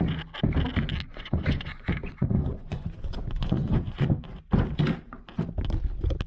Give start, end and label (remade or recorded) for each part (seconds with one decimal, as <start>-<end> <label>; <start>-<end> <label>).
0.0-1.1 recorded; 1.1-4.4 remade; 4.4-6.3 recorded